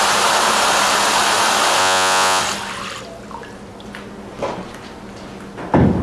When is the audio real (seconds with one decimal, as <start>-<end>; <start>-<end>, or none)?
0.0-1.8; 2.4-6.0